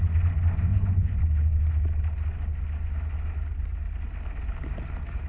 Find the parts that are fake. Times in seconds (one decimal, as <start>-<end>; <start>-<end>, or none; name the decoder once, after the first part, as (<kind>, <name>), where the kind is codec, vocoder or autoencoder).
0.7-1.2 (vocoder, Vocos)